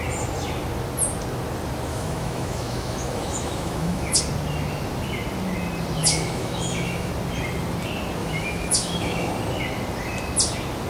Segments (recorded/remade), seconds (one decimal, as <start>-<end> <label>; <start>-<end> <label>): 0.0-1.9 recorded; 1.9-4.2 remade; 4.2-6.0 recorded; 6.0-7.1 remade; 7.1-8.2 recorded; 8.2-9.3 remade; 9.3-10.9 recorded